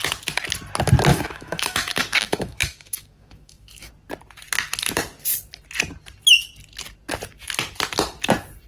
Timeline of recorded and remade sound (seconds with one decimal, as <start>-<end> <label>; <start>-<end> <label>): 0.0-1.1 recorded; 1.1-3.9 remade; 3.9-8.7 recorded